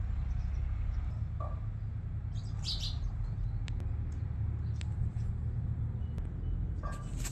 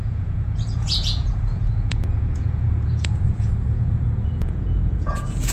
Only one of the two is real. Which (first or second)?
first